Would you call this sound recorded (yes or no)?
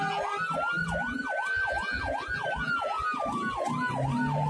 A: yes